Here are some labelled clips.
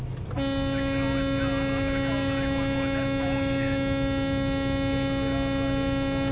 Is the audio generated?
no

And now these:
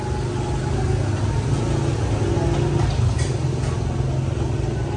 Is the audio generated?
no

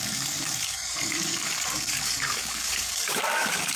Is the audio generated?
yes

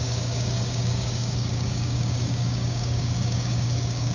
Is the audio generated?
yes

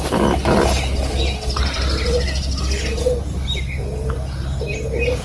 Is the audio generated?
no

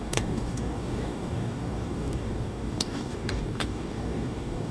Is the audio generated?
yes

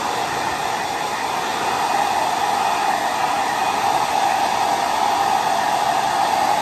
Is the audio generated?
no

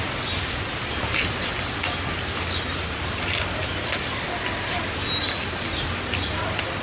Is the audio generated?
no